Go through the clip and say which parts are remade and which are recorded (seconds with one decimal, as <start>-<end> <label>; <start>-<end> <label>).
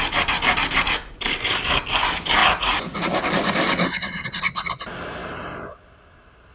0.0-2.4 recorded; 2.4-3.1 remade; 3.1-6.5 recorded